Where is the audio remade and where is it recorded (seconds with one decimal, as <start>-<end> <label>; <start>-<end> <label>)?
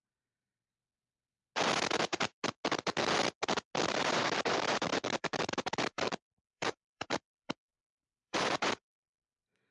0.0-0.8 remade; 0.8-3.9 recorded; 3.9-9.7 remade